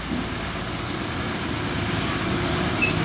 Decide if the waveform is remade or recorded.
recorded